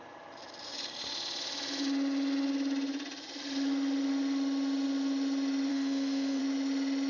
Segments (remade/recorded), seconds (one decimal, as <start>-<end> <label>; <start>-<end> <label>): 0.0-5.7 recorded; 5.7-6.4 remade; 6.4-7.1 recorded